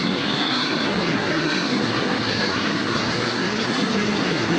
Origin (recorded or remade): remade